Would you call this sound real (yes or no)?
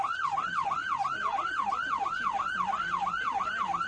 yes